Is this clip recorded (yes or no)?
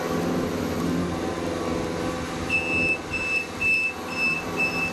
yes